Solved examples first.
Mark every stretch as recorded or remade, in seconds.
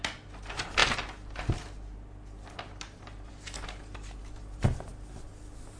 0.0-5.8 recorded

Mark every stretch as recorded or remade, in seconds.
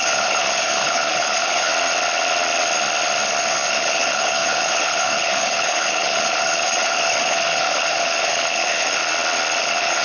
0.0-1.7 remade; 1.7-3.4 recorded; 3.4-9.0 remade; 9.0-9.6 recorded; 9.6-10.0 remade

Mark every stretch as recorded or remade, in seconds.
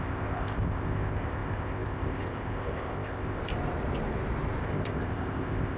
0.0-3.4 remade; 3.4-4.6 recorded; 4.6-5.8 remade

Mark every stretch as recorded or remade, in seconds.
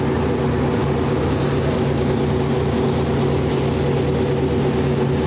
0.0-5.3 recorded